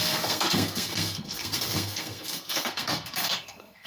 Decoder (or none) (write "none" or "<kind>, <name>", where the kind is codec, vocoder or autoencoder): codec, SNAC